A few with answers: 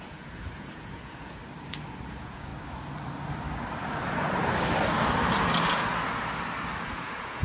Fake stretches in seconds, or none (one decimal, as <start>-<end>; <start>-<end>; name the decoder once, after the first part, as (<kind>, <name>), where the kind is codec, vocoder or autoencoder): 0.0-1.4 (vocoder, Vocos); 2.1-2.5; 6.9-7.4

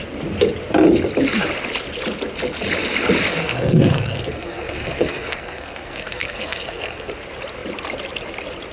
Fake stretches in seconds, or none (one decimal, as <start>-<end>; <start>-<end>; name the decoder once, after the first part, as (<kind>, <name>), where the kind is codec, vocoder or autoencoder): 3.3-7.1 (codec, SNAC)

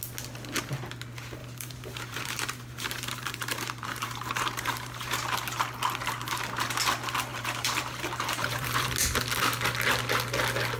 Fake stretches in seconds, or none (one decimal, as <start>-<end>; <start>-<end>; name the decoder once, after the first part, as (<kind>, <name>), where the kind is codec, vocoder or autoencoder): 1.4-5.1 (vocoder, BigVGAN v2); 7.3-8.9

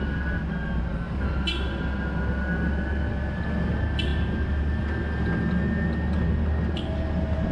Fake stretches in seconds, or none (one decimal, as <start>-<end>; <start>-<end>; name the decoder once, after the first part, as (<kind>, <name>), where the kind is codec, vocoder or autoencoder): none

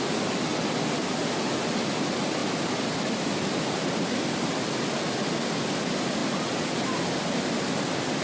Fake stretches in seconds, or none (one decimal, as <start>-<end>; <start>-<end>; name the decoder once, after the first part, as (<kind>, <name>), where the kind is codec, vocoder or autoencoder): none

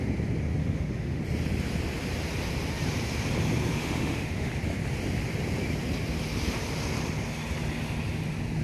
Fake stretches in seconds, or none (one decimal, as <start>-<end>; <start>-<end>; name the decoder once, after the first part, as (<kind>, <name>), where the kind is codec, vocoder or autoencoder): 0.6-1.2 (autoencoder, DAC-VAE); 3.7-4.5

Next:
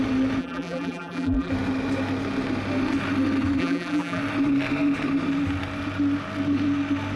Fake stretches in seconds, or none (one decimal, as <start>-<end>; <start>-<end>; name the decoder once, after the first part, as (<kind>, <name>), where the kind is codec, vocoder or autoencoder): 0.4-1.5 (vocoder, BigVGAN v2); 3.6-4.2